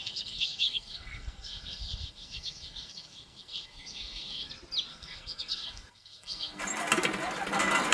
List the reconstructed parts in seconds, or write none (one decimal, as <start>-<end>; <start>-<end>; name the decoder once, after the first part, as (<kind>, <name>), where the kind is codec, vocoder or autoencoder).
0.0-4.5 (codec, SNAC); 4.9-6.6